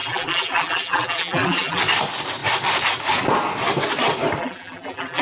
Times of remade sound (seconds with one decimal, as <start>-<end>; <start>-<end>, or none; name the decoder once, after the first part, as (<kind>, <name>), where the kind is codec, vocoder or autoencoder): 0.0-1.8 (vocoder, BigVGAN v2); 4.4-5.2